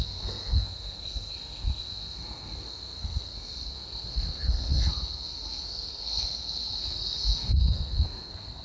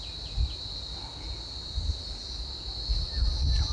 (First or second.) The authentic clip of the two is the second